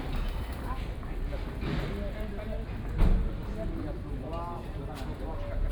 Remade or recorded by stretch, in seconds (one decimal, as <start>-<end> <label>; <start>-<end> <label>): 0.0-5.7 recorded